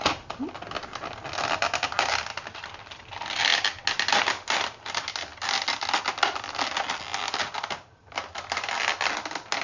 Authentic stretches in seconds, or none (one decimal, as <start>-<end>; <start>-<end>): 0.0-9.6